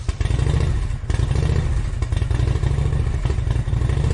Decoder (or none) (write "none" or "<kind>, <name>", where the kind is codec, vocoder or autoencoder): none